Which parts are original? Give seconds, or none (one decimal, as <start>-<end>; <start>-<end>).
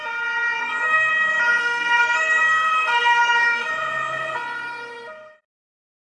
0.0-0.6; 1.1-1.6; 3.7-6.0